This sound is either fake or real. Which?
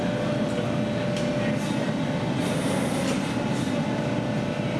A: real